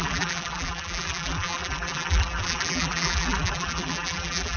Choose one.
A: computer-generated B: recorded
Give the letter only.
A